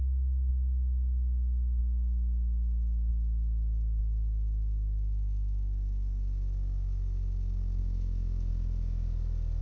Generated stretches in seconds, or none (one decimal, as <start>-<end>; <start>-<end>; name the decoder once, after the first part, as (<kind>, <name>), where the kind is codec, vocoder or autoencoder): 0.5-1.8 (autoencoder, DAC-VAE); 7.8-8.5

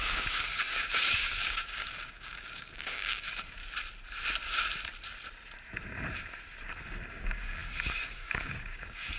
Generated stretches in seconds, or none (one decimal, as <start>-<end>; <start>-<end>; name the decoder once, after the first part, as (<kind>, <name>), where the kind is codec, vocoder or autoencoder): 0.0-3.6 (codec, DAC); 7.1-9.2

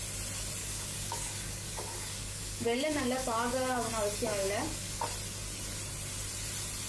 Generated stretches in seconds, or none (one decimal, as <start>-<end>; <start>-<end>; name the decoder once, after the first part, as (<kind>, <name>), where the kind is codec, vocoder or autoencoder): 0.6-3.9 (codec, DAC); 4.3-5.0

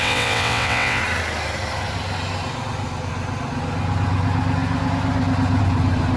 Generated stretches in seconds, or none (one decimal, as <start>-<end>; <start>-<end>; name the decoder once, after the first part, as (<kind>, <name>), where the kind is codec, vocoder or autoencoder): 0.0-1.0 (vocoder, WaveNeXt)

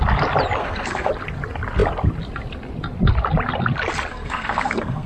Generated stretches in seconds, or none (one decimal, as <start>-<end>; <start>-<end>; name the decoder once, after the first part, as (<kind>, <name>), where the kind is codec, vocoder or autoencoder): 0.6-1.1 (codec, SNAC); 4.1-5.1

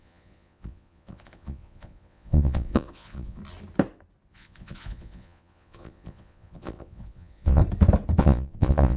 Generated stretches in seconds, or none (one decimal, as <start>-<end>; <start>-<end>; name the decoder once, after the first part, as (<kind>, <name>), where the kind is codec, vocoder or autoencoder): 0.0-3.4 (vocoder, Vocos); 4.3-7.6; 8.2-9.0

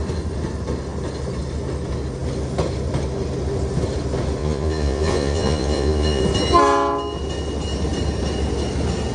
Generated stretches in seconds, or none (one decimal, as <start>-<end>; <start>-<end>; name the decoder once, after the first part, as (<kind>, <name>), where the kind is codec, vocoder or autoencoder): 4.4-6.2 (vocoder, Vocos)